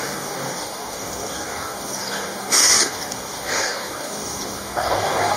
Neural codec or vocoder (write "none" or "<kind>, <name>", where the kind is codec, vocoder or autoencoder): codec, DAC